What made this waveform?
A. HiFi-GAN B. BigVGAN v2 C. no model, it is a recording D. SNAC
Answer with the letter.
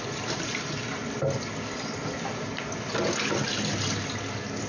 C